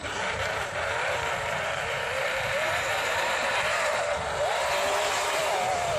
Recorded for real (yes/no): no